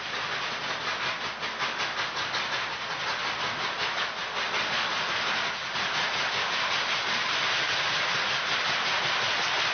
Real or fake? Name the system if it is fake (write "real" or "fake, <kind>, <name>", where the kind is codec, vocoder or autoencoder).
real